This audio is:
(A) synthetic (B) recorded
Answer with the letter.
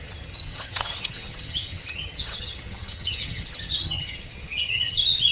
A